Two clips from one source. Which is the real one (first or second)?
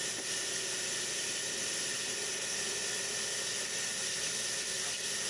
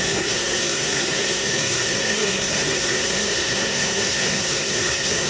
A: first